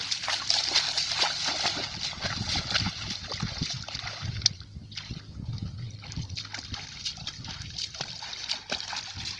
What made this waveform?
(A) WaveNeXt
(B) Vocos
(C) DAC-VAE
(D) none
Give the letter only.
D